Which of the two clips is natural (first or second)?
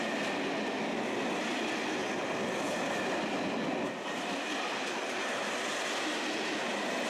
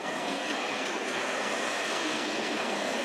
first